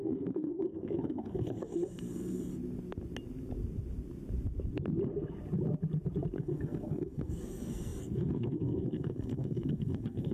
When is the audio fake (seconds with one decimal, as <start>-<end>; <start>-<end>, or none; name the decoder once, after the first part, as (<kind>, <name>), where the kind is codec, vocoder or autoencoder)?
0.0-2.5 (codec, SNAC); 6.4-10.3